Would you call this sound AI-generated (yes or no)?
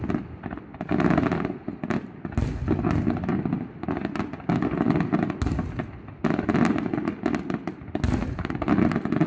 no